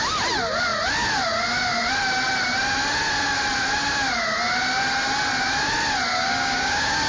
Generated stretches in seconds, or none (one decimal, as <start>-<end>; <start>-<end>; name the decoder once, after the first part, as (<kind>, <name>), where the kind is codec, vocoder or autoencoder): 6.1-7.1 (codec, DAC)